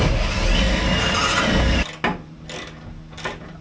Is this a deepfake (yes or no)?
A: no